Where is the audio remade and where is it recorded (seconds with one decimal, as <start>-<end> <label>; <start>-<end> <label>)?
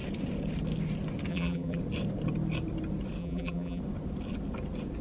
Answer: 0.0-1.3 recorded; 1.3-1.8 remade; 1.8-3.2 recorded; 3.2-3.8 remade; 3.8-5.0 recorded